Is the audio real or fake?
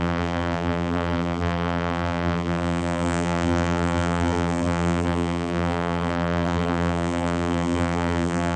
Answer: fake